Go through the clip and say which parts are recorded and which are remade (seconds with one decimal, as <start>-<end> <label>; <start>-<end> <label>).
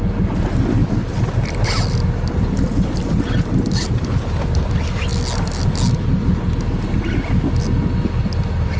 0.0-0.8 recorded; 0.8-4.4 remade; 4.4-8.8 recorded